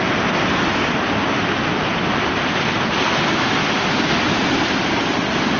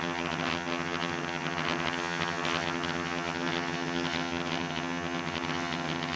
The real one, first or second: first